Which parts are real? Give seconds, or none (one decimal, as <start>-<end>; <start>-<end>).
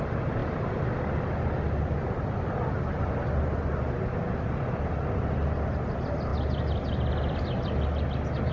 0.0-8.5